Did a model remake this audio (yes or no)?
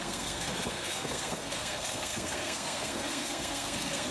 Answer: yes